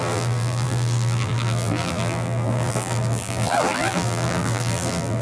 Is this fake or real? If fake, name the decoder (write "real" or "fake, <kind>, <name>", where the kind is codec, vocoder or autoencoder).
fake, vocoder, BigVGAN v2